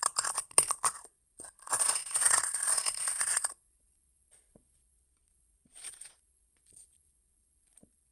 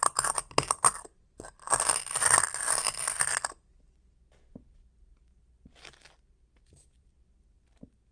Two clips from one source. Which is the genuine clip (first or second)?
second